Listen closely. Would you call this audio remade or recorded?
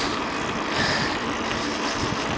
recorded